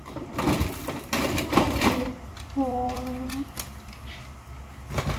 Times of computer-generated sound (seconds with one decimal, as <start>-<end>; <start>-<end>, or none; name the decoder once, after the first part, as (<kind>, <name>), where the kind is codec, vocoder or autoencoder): 0.8-3.9 (vocoder, BigVGAN v2)